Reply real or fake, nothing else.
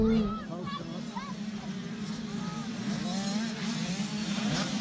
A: real